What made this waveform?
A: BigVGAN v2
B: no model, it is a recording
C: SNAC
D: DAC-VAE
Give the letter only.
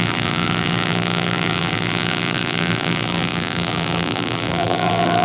A